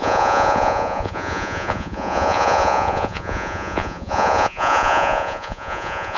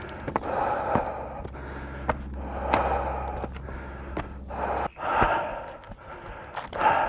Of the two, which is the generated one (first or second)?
first